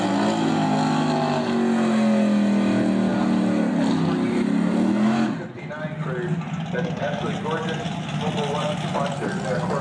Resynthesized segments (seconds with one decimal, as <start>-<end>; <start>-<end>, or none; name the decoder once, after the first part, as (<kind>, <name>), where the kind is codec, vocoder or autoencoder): none